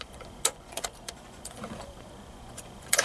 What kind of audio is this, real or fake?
fake